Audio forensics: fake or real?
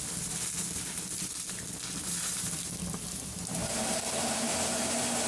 real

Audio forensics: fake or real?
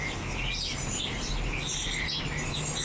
real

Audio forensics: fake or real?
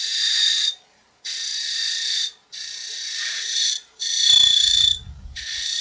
fake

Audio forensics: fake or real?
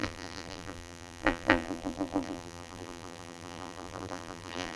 fake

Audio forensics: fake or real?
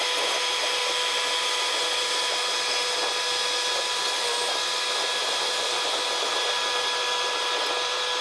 real